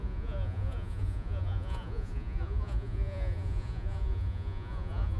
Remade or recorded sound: remade